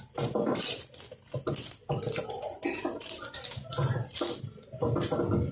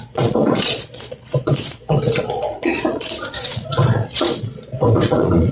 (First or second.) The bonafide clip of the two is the first